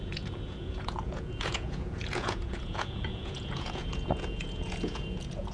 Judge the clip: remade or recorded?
remade